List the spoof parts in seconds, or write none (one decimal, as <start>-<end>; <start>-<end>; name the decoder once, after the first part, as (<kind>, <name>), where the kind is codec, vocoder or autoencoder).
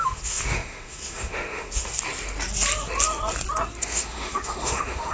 0.0-1.9 (autoencoder, DAC-VAE); 3.8-5.1